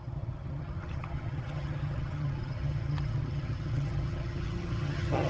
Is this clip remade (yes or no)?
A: yes